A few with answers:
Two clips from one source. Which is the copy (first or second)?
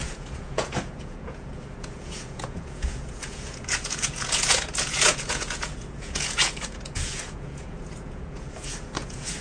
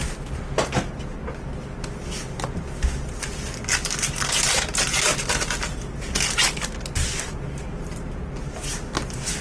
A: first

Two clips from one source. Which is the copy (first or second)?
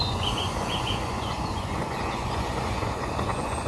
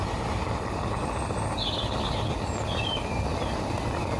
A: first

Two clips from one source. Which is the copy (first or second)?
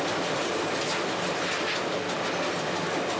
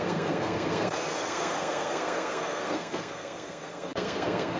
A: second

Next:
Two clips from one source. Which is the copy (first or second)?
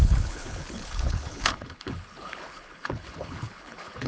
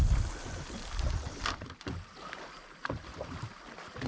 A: first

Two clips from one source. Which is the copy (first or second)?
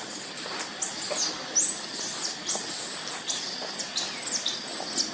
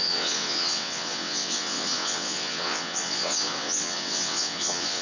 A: second